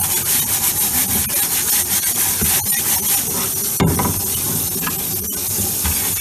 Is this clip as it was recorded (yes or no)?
yes